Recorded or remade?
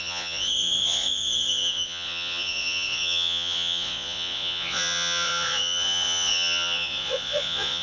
remade